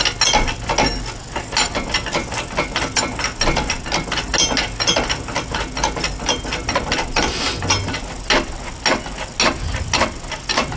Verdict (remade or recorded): recorded